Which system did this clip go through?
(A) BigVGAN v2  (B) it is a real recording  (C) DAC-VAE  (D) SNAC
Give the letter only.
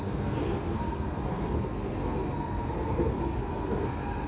D